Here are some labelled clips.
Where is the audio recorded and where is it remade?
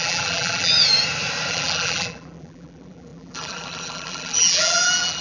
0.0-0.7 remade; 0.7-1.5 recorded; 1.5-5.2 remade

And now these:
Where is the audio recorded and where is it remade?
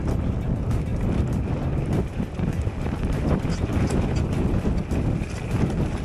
0.0-6.0 recorded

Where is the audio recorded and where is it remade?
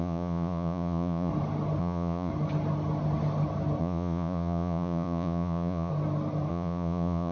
0.0-1.3 remade; 1.3-1.8 recorded; 1.8-2.3 remade; 2.3-3.8 recorded; 3.8-5.9 remade; 5.9-6.5 recorded; 6.5-7.3 remade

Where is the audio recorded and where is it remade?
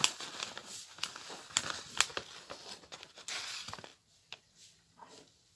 0.0-3.9 recorded; 3.9-4.4 remade; 4.4-5.6 recorded